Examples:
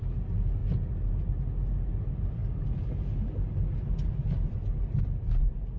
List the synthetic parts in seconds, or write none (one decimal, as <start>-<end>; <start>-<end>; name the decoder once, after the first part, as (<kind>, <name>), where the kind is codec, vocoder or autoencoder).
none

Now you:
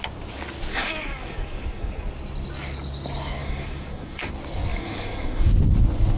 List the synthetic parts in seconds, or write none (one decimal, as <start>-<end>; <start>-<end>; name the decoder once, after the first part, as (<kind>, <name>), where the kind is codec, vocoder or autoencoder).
0.7-2.1 (codec, DAC); 3.4-4.3; 4.7-5.5

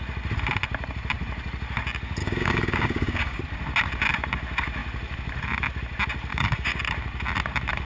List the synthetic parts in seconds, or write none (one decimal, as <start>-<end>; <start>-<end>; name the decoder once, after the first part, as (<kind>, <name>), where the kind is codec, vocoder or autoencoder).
2.2-3.4 (codec, DAC); 6.3-6.8

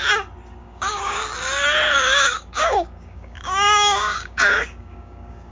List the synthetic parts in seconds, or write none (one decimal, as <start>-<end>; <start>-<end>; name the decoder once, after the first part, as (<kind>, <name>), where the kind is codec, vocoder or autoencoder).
0.6-1.2 (codec, DAC); 2.1-5.5